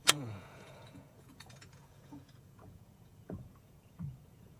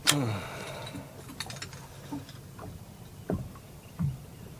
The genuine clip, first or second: second